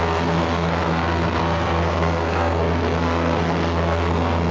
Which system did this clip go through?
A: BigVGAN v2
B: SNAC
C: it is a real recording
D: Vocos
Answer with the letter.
B